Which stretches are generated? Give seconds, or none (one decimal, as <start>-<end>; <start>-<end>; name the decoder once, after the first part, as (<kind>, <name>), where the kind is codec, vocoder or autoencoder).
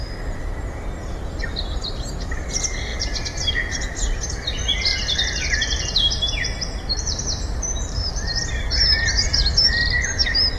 0.0-2.9 (vocoder, BigVGAN v2); 3.5-10.6